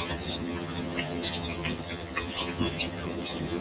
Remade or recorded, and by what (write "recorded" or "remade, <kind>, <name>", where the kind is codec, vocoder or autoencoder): remade, vocoder, HiFi-GAN